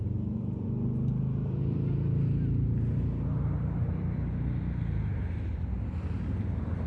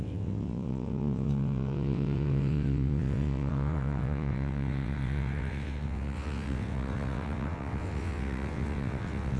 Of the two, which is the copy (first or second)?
second